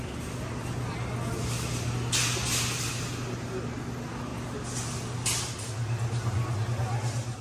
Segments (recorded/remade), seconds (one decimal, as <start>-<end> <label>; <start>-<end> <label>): 0.0-7.4 recorded